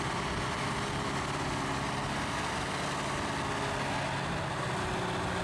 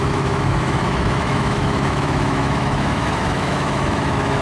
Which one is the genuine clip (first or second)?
first